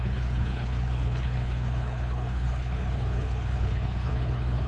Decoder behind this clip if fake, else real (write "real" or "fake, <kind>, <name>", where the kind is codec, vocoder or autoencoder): fake, codec, HILCodec